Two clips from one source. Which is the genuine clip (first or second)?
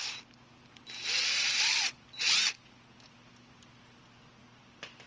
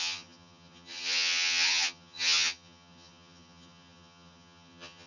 first